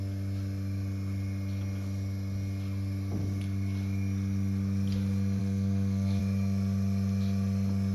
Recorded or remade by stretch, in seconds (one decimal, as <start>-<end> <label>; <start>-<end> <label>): 0.0-5.4 recorded; 5.4-6.2 remade; 6.2-7.9 recorded